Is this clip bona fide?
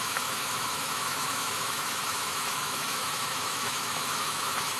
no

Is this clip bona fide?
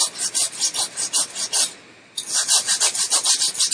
yes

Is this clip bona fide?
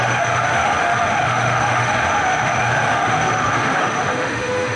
no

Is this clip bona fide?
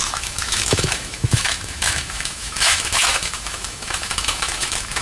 no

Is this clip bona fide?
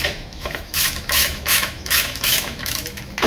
no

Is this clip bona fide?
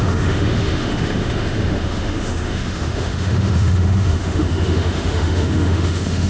no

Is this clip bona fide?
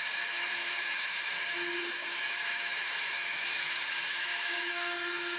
no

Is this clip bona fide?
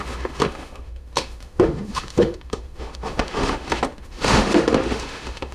no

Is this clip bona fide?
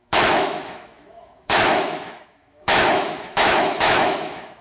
no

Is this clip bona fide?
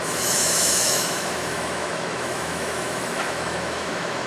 no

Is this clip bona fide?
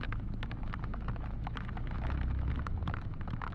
no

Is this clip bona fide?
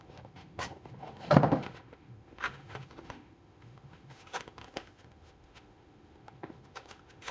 no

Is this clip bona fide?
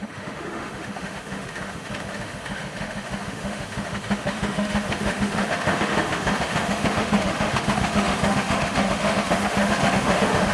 no